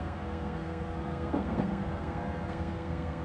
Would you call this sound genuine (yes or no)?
no